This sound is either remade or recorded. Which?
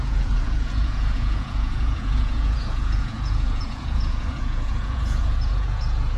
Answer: remade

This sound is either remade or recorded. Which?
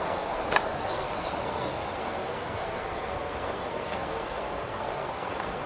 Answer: remade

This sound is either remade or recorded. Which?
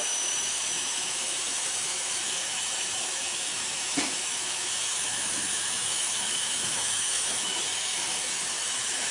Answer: remade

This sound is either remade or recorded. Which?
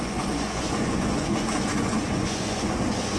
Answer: remade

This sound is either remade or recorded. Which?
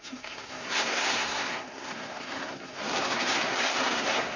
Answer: remade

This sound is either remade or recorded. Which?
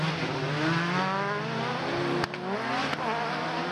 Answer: recorded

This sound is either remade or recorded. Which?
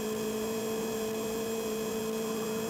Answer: remade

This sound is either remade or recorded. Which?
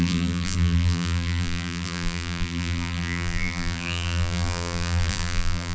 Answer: remade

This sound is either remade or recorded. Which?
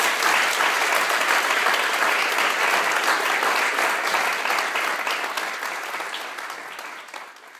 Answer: recorded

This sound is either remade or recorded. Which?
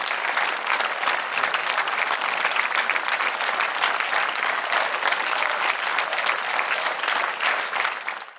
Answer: recorded